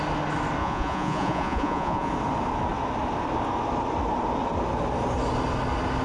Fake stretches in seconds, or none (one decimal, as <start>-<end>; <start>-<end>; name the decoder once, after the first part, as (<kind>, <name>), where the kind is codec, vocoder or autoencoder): 0.6-2.1 (vocoder, Vocos)